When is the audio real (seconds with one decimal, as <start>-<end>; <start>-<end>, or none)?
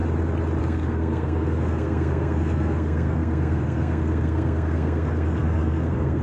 0.0-0.6